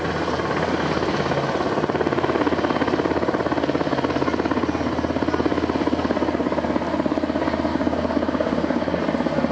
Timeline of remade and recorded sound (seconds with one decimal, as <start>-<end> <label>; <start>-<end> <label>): 0.0-7.7 recorded; 7.7-9.0 remade; 9.0-9.5 recorded